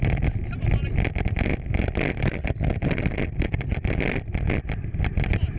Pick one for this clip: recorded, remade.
remade